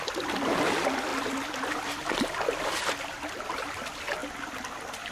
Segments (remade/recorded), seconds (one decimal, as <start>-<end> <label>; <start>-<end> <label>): 0.0-5.1 recorded